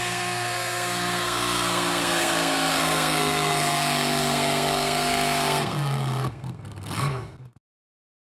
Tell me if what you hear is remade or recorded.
remade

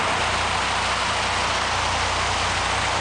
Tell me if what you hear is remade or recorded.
recorded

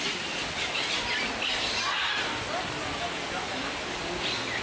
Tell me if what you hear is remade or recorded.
recorded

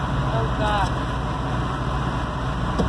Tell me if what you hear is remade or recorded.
recorded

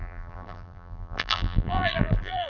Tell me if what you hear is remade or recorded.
remade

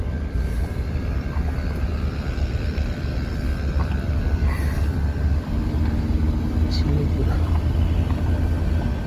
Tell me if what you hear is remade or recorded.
recorded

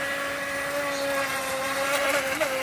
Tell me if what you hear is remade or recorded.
recorded